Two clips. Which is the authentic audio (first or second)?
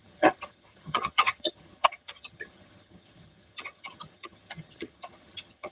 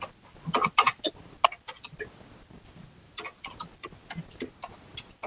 second